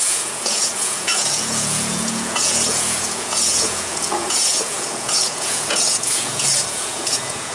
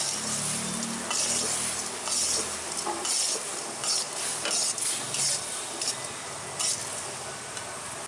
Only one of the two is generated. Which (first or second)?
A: first